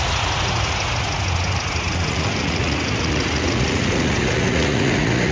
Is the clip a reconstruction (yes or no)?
yes